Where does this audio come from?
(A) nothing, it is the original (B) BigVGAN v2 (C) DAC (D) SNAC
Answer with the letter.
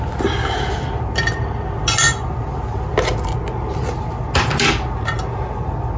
A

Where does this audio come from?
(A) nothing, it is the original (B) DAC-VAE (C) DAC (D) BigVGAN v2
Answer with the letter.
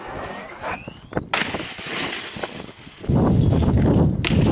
A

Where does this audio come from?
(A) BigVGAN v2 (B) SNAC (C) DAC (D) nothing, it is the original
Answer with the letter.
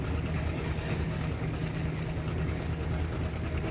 C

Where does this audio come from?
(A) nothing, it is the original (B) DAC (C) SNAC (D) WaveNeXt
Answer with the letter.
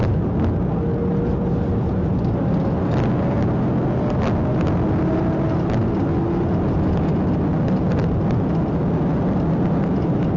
A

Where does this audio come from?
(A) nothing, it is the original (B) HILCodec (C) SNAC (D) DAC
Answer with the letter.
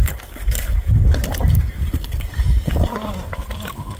D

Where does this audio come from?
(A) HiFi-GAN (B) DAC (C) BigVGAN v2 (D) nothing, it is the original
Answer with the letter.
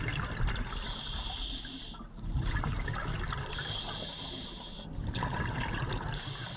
D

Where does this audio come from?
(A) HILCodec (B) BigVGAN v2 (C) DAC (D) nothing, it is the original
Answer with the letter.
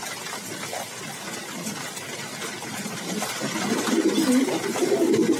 D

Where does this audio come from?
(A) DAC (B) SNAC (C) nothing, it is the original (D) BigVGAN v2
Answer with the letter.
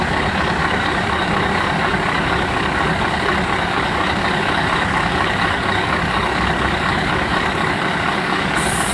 A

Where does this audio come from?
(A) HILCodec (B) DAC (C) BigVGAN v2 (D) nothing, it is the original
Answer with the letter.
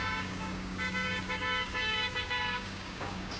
B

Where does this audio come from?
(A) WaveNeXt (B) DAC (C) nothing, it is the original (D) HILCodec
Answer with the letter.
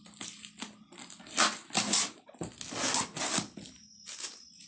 C